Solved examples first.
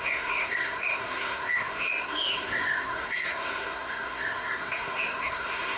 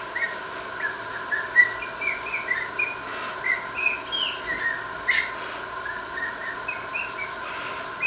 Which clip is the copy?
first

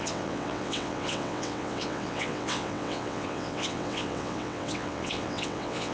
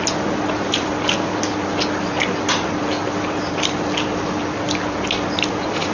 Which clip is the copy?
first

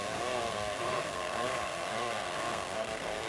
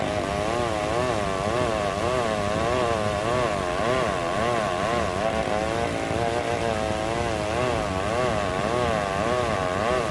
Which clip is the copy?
first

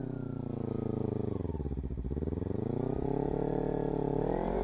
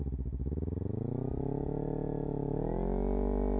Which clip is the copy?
first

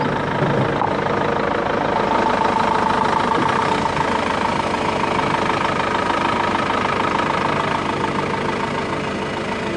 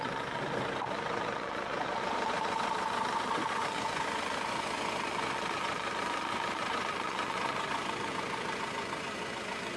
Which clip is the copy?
second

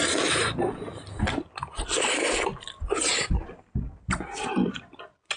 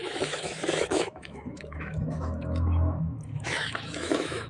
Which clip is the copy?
second